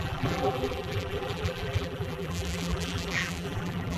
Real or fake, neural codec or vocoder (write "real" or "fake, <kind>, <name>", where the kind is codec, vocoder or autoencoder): fake, vocoder, BigVGAN v2